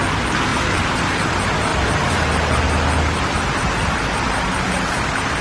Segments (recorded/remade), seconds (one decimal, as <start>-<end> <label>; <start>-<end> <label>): 0.0-0.5 recorded; 0.5-1.0 remade; 1.0-5.4 recorded